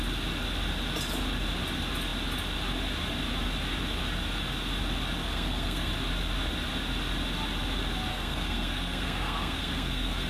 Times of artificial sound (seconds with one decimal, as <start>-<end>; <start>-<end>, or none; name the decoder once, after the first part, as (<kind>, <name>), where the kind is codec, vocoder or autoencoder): 5.2-5.9 (codec, SNAC); 8.1-10.3